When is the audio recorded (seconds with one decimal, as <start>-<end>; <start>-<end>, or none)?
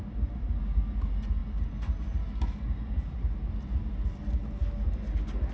0.0-5.5